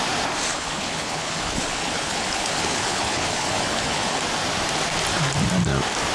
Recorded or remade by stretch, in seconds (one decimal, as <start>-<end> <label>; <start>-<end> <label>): 0.0-0.5 recorded; 0.5-4.2 remade; 4.2-6.1 recorded